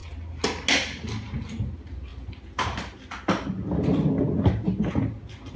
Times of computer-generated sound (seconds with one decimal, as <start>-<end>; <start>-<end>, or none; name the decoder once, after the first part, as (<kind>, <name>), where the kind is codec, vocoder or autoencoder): none